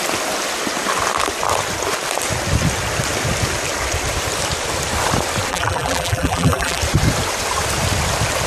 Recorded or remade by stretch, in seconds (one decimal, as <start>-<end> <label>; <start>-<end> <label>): 0.0-5.5 recorded; 5.5-6.8 remade; 6.8-8.5 recorded